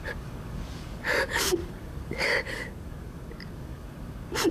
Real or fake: fake